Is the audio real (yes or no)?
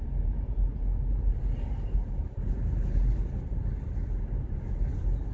yes